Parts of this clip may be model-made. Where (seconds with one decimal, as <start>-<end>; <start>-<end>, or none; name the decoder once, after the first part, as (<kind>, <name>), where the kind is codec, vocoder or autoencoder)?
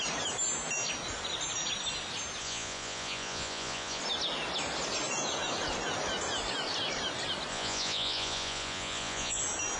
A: 2.4-4.0 (vocoder, Vocos); 7.5-9.4